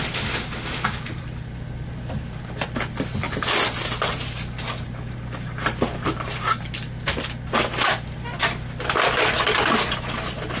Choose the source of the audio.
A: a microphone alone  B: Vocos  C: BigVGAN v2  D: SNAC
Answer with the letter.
A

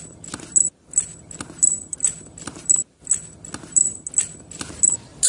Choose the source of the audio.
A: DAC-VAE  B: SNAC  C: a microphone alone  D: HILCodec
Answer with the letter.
C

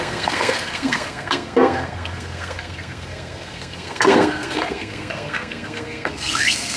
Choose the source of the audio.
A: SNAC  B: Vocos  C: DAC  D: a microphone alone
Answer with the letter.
A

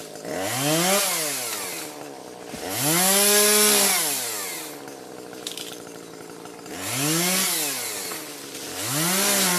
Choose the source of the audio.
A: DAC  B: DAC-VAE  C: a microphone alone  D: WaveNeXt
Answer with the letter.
C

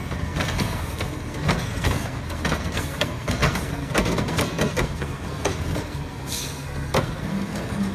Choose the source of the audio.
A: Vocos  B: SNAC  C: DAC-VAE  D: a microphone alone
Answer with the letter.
B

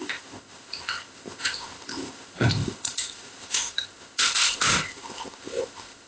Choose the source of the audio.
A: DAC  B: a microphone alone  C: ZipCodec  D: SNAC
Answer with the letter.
C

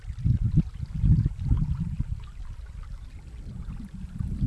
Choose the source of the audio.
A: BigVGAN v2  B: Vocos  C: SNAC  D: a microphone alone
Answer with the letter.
D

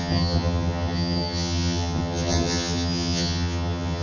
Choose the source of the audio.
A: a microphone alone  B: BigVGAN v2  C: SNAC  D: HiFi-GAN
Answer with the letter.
D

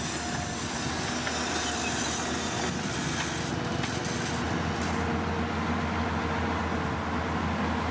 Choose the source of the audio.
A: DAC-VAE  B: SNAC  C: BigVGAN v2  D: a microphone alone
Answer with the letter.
D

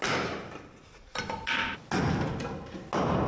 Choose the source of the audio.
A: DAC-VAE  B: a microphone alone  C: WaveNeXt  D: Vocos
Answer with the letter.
B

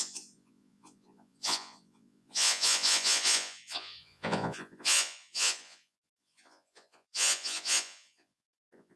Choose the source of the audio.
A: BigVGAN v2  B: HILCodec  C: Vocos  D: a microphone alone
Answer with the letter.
C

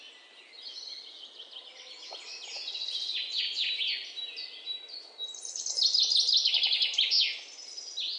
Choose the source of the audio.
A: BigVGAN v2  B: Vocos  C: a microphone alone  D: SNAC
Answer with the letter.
C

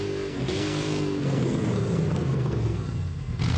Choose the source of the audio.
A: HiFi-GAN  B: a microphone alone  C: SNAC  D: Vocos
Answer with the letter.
C